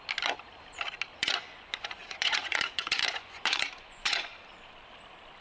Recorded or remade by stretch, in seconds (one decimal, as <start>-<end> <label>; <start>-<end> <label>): 0.0-1.1 recorded; 1.1-4.3 remade; 4.3-5.4 recorded